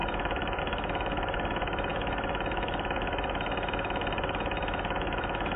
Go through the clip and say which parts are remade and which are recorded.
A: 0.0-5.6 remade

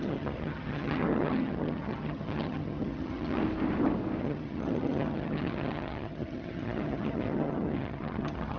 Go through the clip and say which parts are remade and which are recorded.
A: 0.0-3.4 remade; 3.4-4.2 recorded; 4.2-8.6 remade

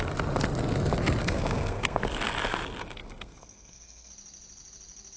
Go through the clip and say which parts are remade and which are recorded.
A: 0.0-1.2 recorded; 1.2-2.0 remade; 2.0-2.8 recorded; 2.8-4.1 remade; 4.1-5.2 recorded

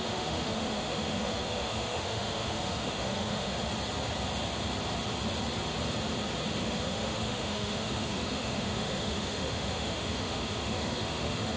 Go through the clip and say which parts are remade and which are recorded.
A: 0.0-3.5 remade; 3.5-6.6 recorded; 6.6-11.6 remade

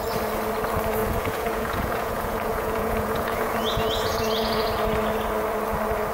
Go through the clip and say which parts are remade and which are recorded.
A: 0.0-1.0 recorded; 1.0-4.7 remade; 4.7-6.1 recorded

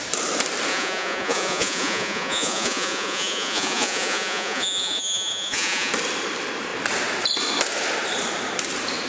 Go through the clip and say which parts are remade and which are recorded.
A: 0.0-0.7 recorded; 0.7-5.9 remade; 5.9-9.1 recorded

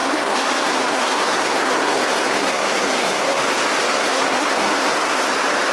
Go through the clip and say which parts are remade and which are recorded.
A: 0.0-3.4 remade; 3.4-3.9 recorded; 3.9-5.3 remade; 5.3-5.7 recorded